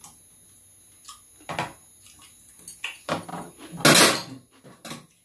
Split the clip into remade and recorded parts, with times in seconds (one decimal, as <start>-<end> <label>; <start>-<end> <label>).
0.0-5.2 recorded